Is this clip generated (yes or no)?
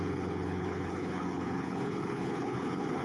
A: yes